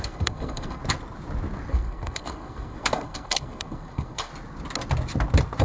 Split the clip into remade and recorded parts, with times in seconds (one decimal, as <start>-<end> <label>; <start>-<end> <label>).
0.0-0.8 remade; 0.8-1.7 recorded; 1.7-4.3 remade; 4.3-5.6 recorded